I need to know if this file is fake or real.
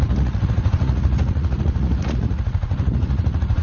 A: fake